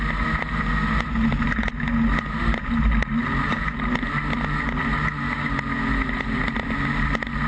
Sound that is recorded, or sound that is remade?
recorded